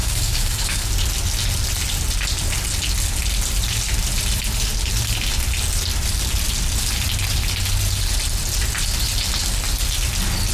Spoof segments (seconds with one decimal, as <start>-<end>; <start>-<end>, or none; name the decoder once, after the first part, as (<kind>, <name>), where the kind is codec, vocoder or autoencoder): 0.0-0.9 (codec, DAC)

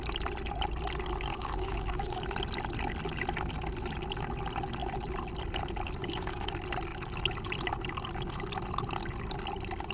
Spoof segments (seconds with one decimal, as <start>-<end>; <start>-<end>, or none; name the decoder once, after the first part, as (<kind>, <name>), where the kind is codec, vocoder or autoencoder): 1.3-2.2 (codec, DAC); 6.0-6.5